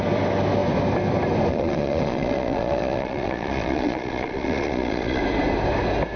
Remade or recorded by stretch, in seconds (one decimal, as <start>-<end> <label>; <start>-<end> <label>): 0.0-1.5 recorded; 1.5-5.2 remade; 5.2-6.2 recorded